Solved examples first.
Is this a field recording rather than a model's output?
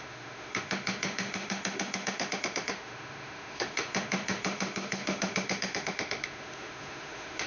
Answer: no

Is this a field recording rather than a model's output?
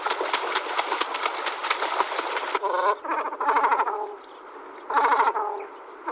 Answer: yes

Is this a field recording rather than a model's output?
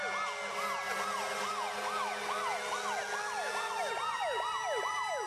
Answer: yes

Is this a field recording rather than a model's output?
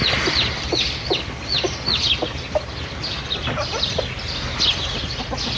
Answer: yes